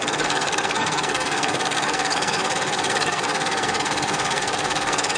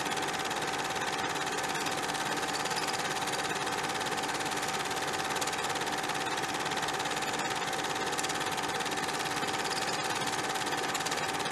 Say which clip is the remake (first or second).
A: first